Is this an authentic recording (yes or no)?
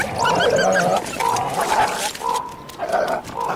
yes